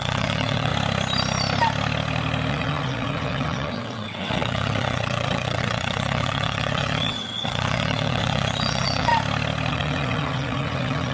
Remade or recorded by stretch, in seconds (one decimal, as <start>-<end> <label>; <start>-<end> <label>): 0.0-0.7 remade; 0.7-2.5 recorded; 2.5-9.1 remade; 9.1-9.7 recorded; 9.7-11.1 remade